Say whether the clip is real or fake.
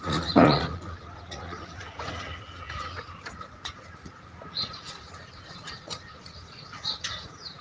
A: fake